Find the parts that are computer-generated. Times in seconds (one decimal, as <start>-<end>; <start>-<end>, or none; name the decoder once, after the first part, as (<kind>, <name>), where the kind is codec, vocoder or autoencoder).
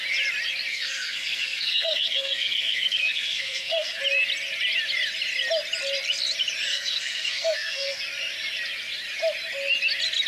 0.7-4.0 (codec, SNAC); 6.7-8.0